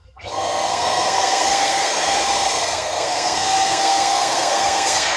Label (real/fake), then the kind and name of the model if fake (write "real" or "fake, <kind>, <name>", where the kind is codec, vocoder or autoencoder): fake, codec, SNAC